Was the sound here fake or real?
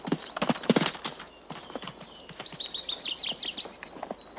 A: real